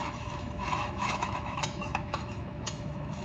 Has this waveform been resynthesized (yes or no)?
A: yes